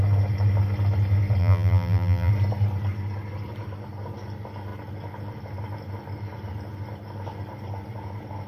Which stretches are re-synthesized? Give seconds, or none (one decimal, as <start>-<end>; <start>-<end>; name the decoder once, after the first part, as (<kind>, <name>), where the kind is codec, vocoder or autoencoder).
1.4-2.3 (vocoder, BigVGAN v2)